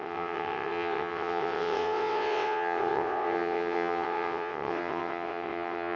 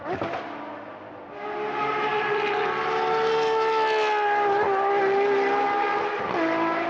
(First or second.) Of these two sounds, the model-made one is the first